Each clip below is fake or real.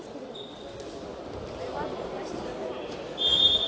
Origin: real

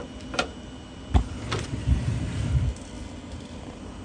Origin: real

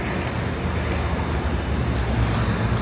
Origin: real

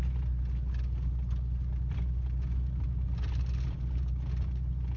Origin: real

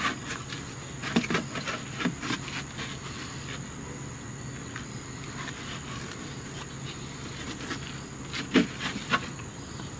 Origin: real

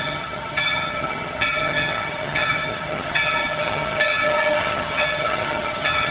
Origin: fake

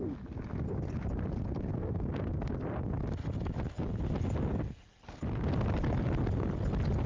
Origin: real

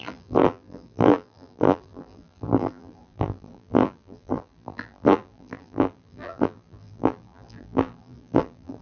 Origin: fake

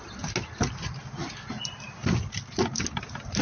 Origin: real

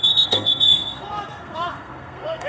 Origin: fake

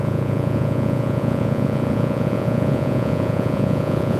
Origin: fake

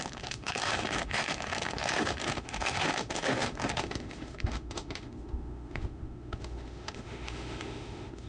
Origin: fake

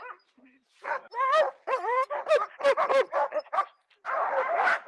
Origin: fake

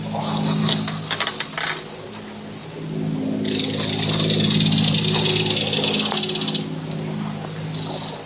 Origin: real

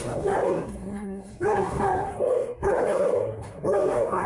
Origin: fake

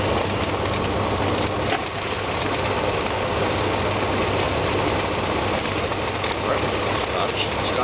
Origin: real